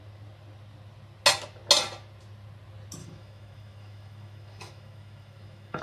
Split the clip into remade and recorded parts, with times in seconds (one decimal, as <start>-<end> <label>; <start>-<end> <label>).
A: 0.0-3.0 recorded; 3.0-5.8 remade